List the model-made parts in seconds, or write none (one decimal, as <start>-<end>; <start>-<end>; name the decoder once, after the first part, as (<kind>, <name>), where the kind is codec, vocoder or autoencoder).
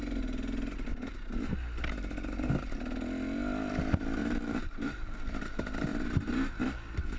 4.2-5.2 (vocoder, BigVGAN v2); 5.9-6.6